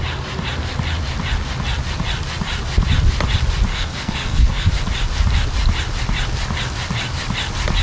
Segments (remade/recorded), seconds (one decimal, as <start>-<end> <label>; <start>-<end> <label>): 0.0-3.7 recorded; 3.7-4.7 remade; 4.7-7.8 recorded